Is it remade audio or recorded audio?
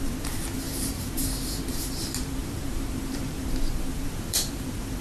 remade